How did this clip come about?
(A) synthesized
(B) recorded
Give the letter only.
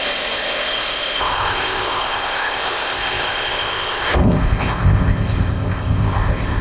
A